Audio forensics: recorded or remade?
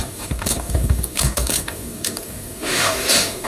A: remade